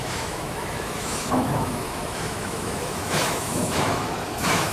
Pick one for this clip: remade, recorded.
remade